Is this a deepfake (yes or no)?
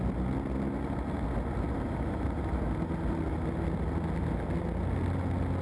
no